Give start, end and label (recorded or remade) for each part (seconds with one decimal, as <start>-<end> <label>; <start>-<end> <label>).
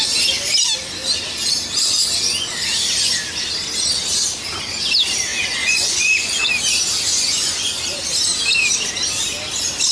0.0-5.3 recorded; 5.3-6.5 remade; 6.5-7.1 recorded; 7.1-7.8 remade; 7.8-9.9 recorded